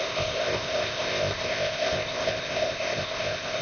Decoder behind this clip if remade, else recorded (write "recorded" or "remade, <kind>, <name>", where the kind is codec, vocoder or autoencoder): remade, codec, ZipCodec